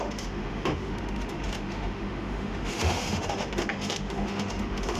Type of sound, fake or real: fake